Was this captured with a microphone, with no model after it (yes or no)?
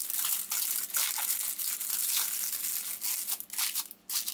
yes